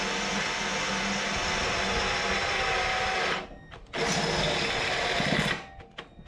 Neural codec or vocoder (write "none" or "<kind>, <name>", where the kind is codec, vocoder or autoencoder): none